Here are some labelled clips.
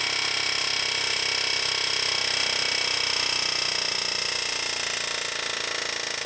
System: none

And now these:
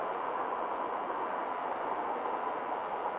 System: none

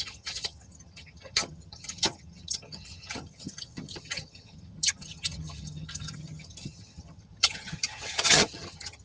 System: vocoder, HiFi-GAN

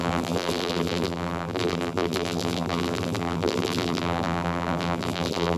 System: vocoder, BigVGAN v2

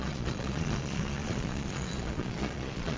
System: vocoder, Vocos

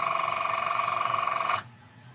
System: vocoder, Vocos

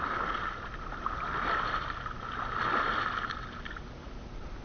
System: none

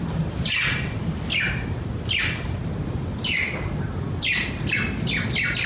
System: none